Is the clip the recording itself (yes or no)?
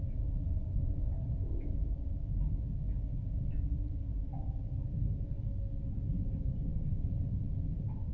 yes